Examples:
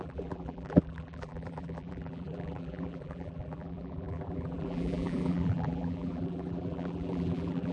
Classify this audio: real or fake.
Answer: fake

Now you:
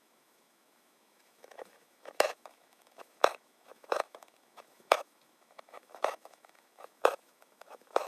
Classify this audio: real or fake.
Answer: fake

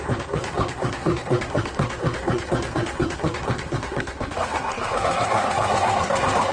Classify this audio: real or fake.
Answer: fake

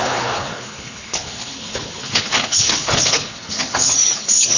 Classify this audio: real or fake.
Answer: fake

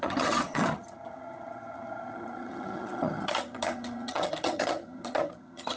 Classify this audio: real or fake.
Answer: fake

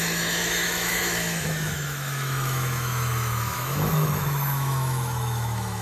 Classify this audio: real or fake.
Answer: fake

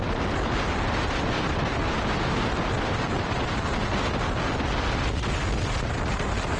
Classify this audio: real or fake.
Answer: real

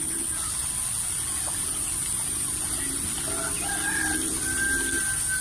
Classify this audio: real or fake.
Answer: fake